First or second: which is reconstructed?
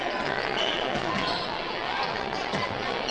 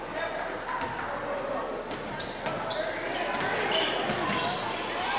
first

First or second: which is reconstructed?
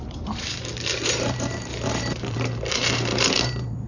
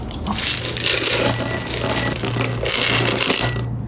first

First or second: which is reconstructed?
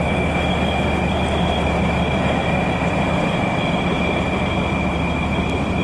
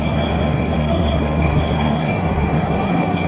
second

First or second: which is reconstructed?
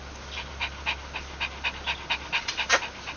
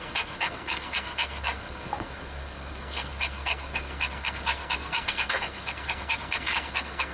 second